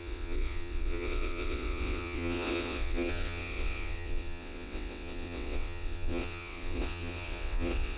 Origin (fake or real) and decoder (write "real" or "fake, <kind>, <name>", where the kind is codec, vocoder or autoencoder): fake, vocoder, WaveNeXt